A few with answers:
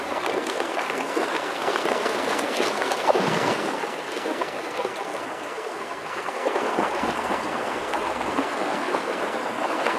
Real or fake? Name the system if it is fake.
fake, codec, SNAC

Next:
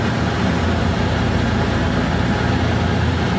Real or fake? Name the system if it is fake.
real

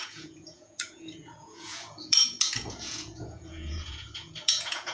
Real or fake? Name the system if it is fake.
fake, vocoder, Vocos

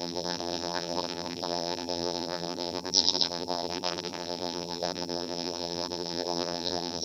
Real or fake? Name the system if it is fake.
fake, vocoder, BigVGAN v2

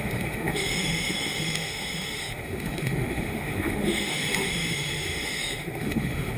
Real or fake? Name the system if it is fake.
fake, autoencoder, DAC-VAE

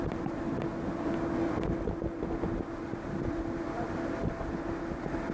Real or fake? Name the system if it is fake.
real